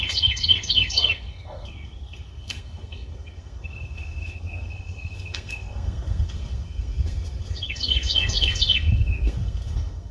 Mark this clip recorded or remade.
remade